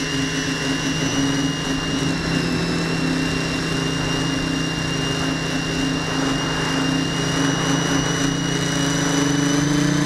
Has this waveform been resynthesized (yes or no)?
no